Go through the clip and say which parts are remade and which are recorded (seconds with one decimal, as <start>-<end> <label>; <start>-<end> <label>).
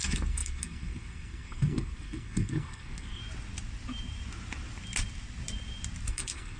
0.0-3.2 remade; 3.2-6.1 recorded; 6.1-6.6 remade